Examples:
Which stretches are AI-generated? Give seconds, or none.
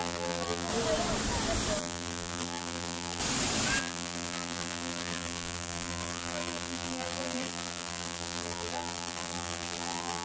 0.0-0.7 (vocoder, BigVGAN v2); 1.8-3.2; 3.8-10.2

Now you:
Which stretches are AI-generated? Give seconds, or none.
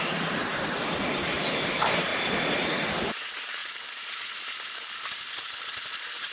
0.0-2.1 (vocoder, BigVGAN v2); 2.6-6.3